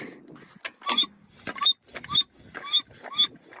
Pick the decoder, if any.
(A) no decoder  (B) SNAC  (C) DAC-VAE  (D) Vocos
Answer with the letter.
A